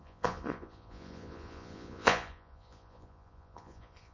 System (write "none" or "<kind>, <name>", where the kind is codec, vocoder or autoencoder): vocoder, Vocos